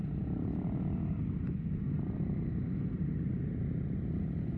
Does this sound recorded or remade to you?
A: recorded